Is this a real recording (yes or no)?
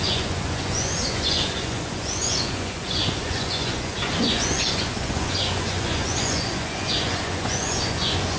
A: no